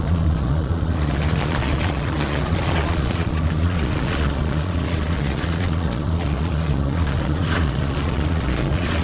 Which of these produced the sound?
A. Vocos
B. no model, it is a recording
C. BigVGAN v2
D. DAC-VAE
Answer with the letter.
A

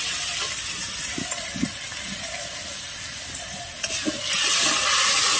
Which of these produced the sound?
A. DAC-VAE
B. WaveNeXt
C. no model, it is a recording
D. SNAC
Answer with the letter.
C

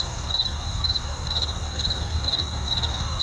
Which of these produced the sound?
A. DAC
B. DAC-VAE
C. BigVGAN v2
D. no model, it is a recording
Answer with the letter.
A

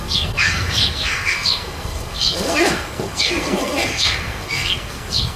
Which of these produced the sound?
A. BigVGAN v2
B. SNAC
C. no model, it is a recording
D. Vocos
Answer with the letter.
B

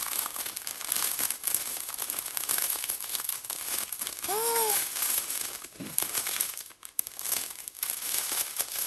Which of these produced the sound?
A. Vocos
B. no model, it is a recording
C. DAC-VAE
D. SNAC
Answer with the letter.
C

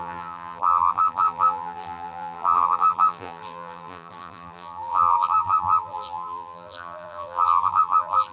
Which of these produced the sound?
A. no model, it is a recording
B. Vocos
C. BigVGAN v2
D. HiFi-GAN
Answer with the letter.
C